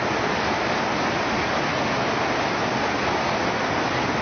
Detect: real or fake real